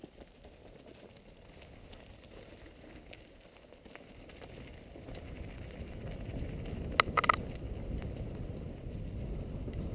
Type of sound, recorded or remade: recorded